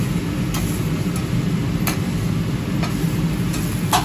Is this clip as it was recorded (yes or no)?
yes